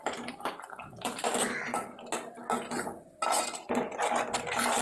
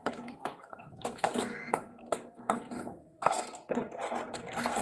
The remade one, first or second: second